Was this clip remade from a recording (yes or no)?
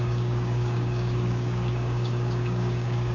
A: yes